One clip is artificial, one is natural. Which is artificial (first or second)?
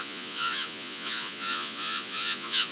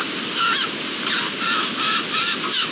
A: first